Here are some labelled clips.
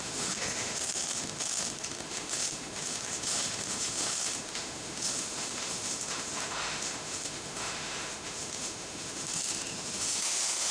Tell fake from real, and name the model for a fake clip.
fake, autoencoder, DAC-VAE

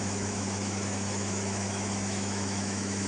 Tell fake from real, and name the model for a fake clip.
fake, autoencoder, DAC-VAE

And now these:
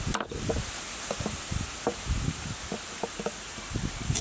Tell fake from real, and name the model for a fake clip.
real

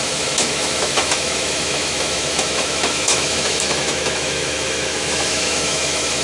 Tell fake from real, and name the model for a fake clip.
fake, autoencoder, DAC-VAE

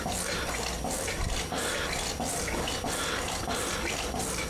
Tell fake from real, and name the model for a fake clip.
real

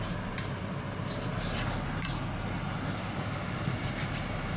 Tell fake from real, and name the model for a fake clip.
real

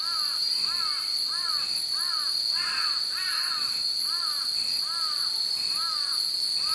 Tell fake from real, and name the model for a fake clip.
real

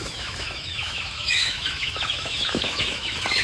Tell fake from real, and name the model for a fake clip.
fake, autoencoder, DAC-VAE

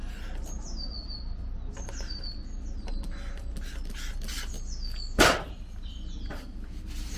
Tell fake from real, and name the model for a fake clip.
real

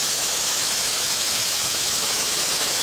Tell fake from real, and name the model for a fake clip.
fake, autoencoder, DAC-VAE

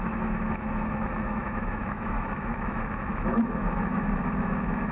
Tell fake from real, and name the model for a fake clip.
fake, autoencoder, DAC-VAE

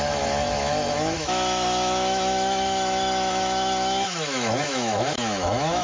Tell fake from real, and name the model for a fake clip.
fake, autoencoder, DAC-VAE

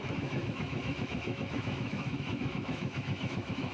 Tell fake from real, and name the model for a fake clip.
fake, autoencoder, DAC-VAE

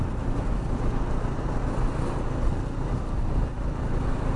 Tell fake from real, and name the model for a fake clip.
real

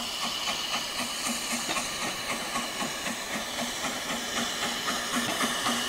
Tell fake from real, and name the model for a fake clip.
real